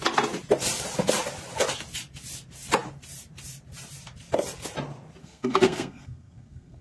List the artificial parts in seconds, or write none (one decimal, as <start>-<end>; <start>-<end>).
5.2-6.8